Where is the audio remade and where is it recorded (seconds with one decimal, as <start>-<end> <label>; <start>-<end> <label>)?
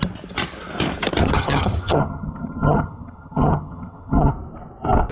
0.0-1.2 recorded; 1.2-4.3 remade; 4.3-5.1 recorded